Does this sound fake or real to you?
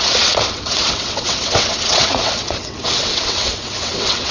fake